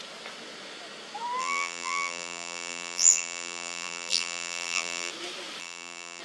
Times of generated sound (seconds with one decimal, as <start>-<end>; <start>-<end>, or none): 1.4-5.1; 5.6-6.2